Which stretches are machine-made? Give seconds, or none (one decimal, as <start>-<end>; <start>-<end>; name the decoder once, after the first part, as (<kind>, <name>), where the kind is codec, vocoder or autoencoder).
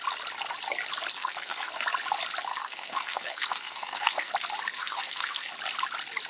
1.2-1.7 (codec, SNAC); 2.5-4.3; 4.8-5.5